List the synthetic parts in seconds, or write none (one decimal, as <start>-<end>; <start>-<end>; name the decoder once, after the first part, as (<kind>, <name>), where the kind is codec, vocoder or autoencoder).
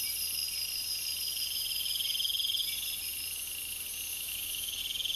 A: 4.1-4.8 (autoencoder, DAC-VAE)